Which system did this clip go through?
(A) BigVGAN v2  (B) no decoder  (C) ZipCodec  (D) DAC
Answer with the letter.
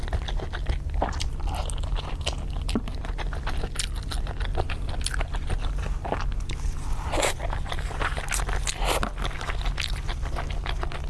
B